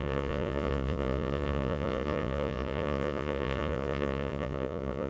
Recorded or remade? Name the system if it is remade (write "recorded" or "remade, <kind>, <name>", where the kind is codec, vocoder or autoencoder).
remade, vocoder, Vocos